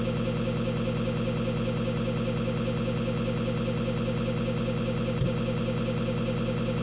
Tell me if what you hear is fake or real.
real